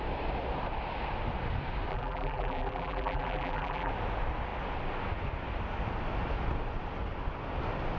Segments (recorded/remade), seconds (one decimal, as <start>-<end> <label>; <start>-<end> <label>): 0.0-1.9 recorded; 1.9-3.9 remade; 3.9-8.0 recorded